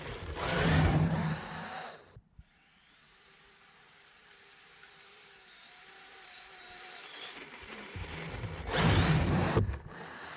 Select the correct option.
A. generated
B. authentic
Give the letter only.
A